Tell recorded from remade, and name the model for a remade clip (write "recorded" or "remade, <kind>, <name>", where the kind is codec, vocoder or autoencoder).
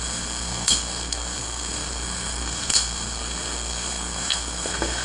remade, codec, SNAC